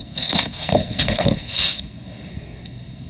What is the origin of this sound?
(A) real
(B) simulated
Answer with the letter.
B